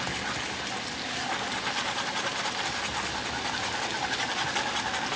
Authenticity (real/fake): real